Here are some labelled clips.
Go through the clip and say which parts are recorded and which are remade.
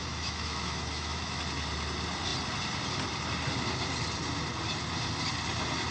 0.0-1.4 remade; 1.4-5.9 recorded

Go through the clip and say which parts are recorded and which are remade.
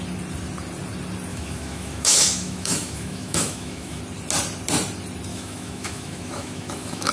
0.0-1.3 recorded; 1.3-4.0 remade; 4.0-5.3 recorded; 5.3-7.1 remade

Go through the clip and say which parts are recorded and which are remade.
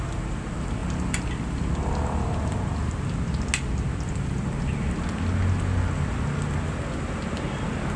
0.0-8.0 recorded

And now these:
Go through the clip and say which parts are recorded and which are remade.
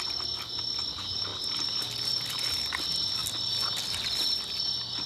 0.0-5.1 recorded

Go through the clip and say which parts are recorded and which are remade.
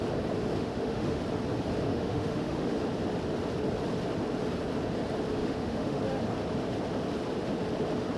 0.0-0.6 recorded; 0.6-1.2 remade; 1.2-1.9 recorded; 1.9-2.8 remade; 2.8-5.4 recorded; 5.4-6.0 remade; 6.0-8.2 recorded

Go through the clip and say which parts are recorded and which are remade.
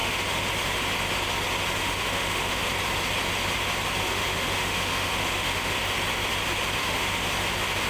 0.0-0.5 remade; 0.5-1.8 recorded; 1.8-2.6 remade; 2.6-4.0 recorded; 4.0-5.7 remade; 5.7-6.8 recorded; 6.8-7.3 remade; 7.3-7.9 recorded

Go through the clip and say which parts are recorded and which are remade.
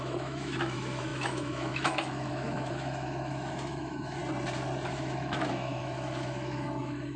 0.0-4.2 remade; 4.2-4.9 recorded; 4.9-7.2 remade